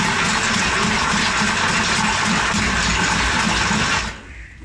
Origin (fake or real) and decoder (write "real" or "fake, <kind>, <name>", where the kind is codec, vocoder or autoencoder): real